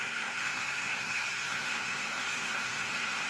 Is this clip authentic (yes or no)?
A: no